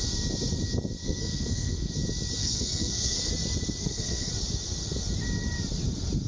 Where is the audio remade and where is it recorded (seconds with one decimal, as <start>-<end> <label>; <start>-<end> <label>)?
0.0-1.0 recorded; 1.0-1.9 remade; 1.9-2.4 recorded; 2.4-3.3 remade; 3.3-3.8 recorded; 3.8-4.3 remade; 4.3-6.3 recorded